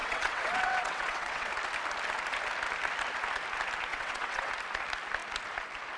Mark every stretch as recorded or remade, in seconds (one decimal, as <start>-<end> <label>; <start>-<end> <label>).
0.0-1.5 remade; 1.5-3.9 recorded; 3.9-4.5 remade; 4.5-6.0 recorded